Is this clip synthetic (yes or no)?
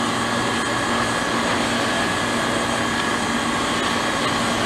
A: no